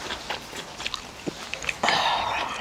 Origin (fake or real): real